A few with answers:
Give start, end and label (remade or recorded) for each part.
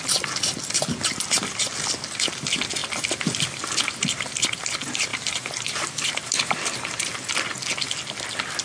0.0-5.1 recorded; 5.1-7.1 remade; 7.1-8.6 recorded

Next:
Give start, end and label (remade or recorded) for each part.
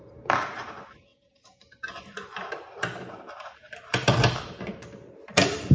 0.0-5.7 remade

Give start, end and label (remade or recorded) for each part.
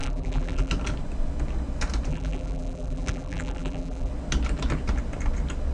0.0-0.7 remade; 0.7-2.1 recorded; 2.1-4.1 remade; 4.1-5.7 recorded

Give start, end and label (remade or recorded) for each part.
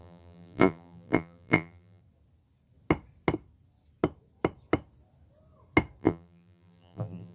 0.0-2.0 remade; 2.0-6.0 recorded; 6.0-7.3 remade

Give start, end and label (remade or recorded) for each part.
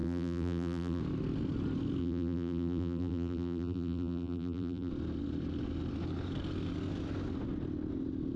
0.0-1.0 remade; 1.0-2.0 recorded; 2.0-4.9 remade; 4.9-8.4 recorded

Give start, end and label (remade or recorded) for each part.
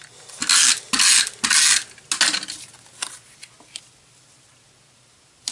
0.0-5.5 recorded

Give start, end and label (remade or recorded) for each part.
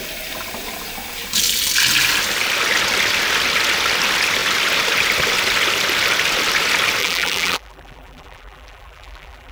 0.0-7.0 recorded; 7.0-9.5 remade